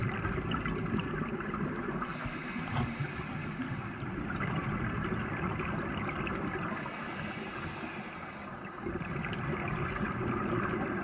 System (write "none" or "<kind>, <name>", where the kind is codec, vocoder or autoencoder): none